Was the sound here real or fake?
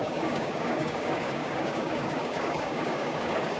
fake